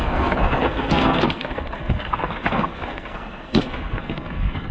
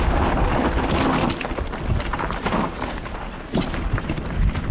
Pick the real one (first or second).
second